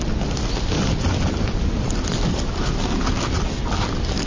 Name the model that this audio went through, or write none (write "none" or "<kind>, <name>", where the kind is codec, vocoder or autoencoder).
none